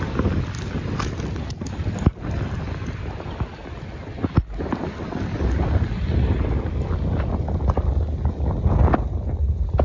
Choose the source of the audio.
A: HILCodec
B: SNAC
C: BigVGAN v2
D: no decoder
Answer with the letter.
D